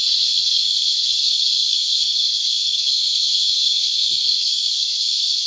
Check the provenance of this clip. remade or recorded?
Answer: remade